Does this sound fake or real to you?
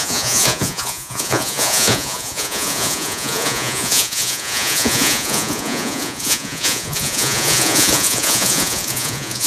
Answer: fake